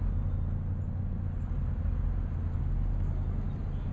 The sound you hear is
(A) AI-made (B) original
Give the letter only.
B